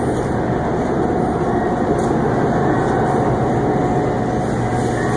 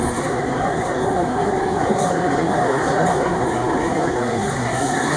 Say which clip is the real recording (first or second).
first